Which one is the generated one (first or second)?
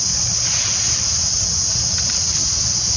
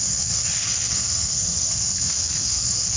second